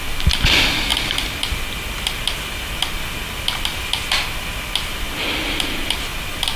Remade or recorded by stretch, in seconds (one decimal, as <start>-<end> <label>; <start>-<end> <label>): 0.0-6.6 recorded